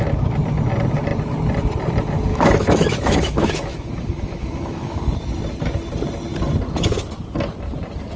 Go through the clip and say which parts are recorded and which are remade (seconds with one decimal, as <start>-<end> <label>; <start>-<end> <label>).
0.0-2.3 recorded; 2.3-5.0 remade; 5.0-8.2 recorded